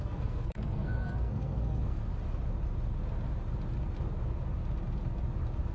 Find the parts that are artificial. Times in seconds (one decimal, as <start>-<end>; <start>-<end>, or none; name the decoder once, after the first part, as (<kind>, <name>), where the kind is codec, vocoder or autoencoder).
0.0-2.1 (codec, SNAC)